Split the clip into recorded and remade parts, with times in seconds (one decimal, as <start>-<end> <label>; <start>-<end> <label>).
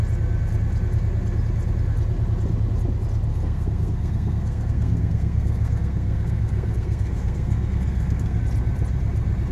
0.0-3.3 recorded; 3.3-8.4 remade; 8.4-9.5 recorded